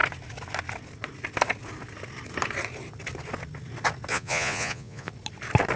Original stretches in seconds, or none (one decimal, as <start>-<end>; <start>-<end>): 0.0-4.1; 5.1-5.8